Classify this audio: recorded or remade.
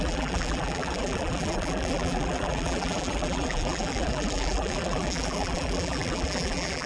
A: remade